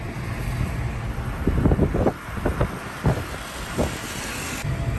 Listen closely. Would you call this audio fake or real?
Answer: real